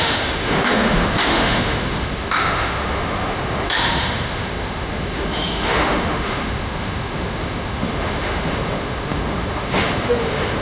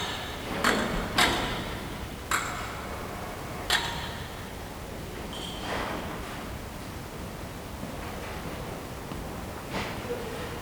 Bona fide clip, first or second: second